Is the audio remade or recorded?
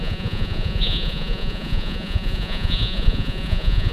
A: remade